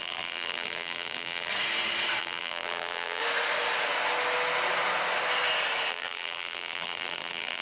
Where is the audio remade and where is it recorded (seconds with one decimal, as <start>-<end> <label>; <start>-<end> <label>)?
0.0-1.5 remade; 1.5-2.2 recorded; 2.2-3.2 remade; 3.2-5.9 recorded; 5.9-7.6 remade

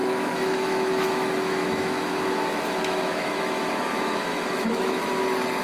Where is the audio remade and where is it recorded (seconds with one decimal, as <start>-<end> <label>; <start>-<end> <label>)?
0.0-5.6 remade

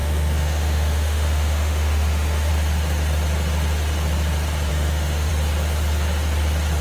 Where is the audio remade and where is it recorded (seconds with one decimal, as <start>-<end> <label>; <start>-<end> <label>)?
0.0-2.5 remade; 2.5-4.7 recorded; 4.7-5.3 remade; 5.3-6.8 recorded

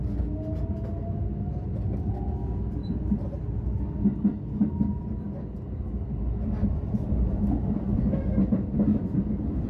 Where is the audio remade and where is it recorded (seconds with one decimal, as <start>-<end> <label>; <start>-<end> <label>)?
0.0-2.8 recorded; 2.8-3.4 remade; 3.4-9.7 recorded

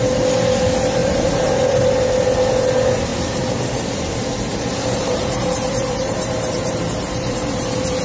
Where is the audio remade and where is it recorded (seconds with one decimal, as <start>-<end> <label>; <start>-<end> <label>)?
0.0-1.0 recorded; 1.0-1.6 remade; 1.6-3.1 recorded; 3.1-4.0 remade; 4.0-4.5 recorded; 4.5-8.0 remade

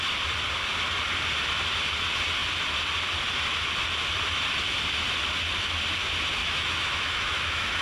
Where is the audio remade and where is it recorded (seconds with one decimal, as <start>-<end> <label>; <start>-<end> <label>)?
0.0-6.4 recorded; 6.4-7.8 remade

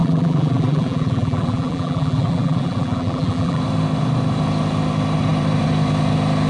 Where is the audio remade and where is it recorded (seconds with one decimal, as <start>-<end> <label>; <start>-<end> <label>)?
0.0-3.6 remade; 3.6-6.5 recorded